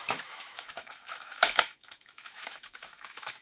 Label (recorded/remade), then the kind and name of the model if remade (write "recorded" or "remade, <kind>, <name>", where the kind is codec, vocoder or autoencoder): remade, autoencoder, DAC-VAE